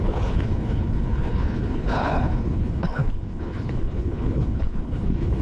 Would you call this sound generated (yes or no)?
yes